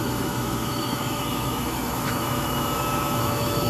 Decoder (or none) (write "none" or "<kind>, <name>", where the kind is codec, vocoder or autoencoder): autoencoder, DAC-VAE